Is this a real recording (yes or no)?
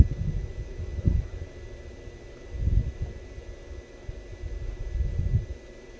yes